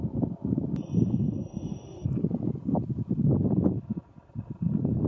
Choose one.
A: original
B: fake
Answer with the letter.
B